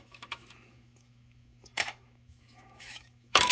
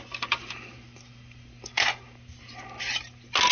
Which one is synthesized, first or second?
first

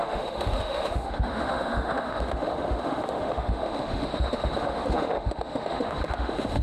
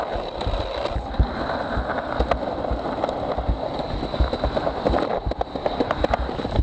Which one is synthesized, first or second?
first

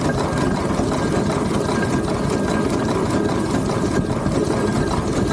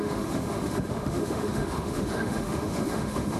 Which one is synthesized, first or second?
second